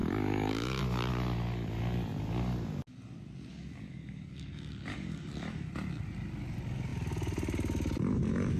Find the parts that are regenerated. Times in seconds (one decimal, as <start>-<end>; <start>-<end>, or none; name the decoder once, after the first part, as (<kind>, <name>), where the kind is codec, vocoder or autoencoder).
0.0-0.8 (codec, DAC); 3.5-5.7